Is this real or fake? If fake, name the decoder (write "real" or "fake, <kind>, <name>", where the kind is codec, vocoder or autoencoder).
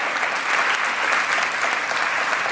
real